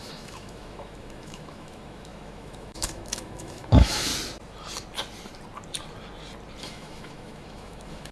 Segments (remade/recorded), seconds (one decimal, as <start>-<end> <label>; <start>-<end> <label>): 0.0-4.1 remade; 4.1-6.6 recorded; 6.6-8.1 remade